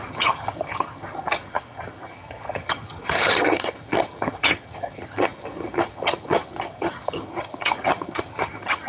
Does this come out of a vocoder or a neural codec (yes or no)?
yes